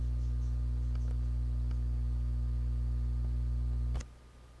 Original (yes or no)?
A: yes